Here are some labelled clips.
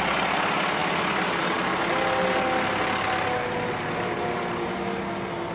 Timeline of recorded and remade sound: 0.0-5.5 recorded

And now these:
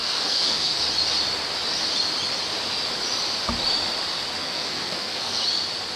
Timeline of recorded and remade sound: 0.0-0.8 remade; 0.8-4.4 recorded; 4.4-5.4 remade; 5.4-6.0 recorded

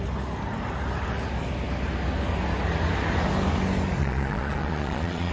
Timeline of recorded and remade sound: 0.0-4.0 recorded; 4.0-5.3 remade

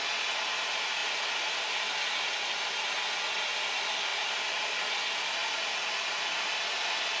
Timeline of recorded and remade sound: 0.0-7.2 recorded

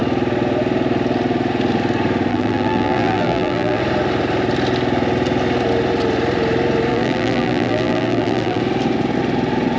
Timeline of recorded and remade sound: 0.0-2.3 recorded; 2.3-3.8 remade; 3.8-6.9 recorded; 6.9-8.6 remade; 8.6-9.8 recorded

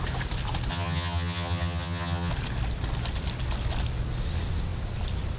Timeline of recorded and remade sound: 0.0-0.7 recorded; 0.7-2.3 remade; 2.3-5.4 recorded